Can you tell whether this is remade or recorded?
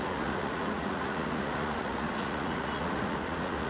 remade